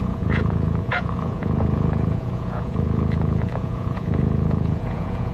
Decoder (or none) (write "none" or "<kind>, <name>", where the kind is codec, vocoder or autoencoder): vocoder, Vocos